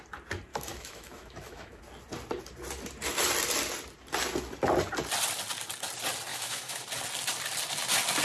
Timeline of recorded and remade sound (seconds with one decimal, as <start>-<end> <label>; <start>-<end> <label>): 0.0-0.5 recorded; 0.5-1.8 remade; 1.8-6.3 recorded; 6.3-6.8 remade; 6.8-8.2 recorded